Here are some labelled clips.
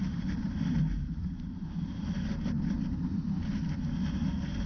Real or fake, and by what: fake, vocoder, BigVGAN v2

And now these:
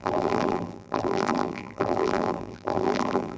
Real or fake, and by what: fake, vocoder, BigVGAN v2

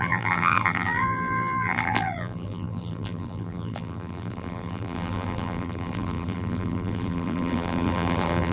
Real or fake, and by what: fake, vocoder, BigVGAN v2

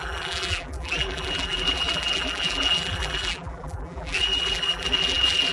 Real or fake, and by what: fake, vocoder, BigVGAN v2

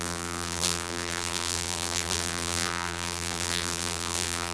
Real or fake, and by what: fake, vocoder, BigVGAN v2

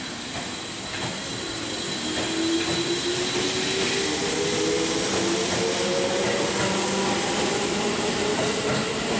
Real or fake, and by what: real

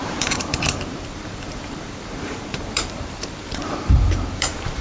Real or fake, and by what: fake, vocoder, BigVGAN v2